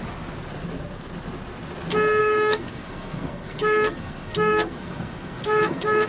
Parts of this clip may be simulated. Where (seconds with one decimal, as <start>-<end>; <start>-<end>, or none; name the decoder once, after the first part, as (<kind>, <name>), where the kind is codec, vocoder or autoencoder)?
2.2-6.1 (codec, SNAC)